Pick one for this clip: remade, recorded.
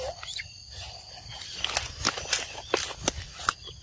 recorded